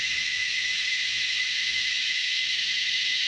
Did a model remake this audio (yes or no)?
yes